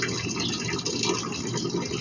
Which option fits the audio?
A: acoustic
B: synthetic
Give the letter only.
A